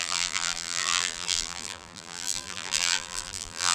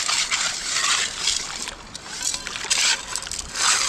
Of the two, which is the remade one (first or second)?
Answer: first